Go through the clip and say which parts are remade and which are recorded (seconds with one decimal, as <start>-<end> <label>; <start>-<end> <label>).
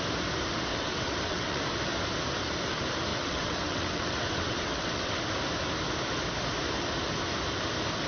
0.0-0.7 recorded; 0.7-1.6 remade; 1.6-3.1 recorded; 3.1-5.2 remade; 5.2-8.1 recorded